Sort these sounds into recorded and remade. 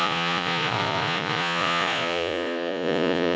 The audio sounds remade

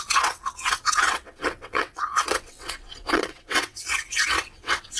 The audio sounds remade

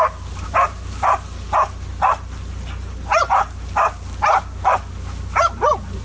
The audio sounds recorded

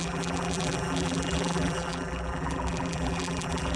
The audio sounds remade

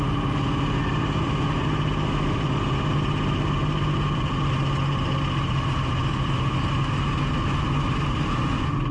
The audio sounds recorded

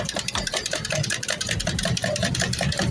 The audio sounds remade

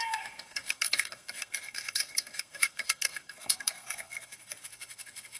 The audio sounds remade